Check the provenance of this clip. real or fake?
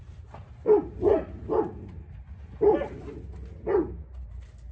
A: real